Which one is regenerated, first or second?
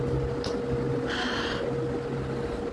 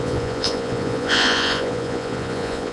second